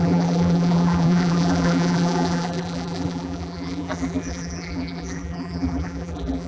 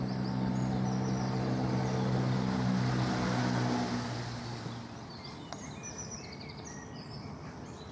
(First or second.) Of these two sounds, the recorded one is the second